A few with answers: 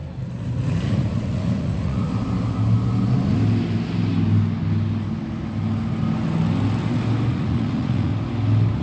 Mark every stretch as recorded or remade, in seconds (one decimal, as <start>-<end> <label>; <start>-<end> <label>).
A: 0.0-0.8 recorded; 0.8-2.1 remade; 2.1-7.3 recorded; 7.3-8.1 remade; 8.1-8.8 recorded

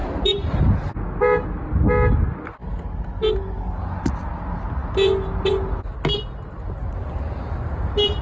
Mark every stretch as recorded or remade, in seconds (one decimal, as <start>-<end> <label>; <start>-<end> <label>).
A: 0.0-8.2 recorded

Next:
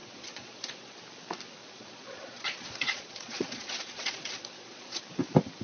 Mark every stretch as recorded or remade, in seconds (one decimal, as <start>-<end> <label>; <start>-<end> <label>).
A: 0.0-1.0 remade; 1.0-1.6 recorded; 1.6-5.0 remade; 5.0-5.6 recorded

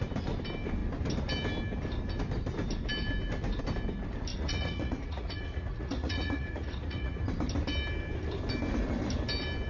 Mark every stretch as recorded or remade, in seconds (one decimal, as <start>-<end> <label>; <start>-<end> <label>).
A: 0.0-4.3 recorded; 4.3-7.2 remade; 7.2-9.7 recorded

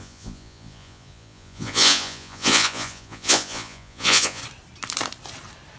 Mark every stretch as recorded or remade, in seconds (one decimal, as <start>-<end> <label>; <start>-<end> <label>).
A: 0.0-4.4 remade; 4.4-5.8 recorded

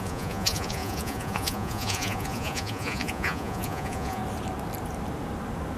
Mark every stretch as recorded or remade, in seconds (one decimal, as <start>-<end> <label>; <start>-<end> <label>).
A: 0.0-4.2 remade; 4.2-5.8 recorded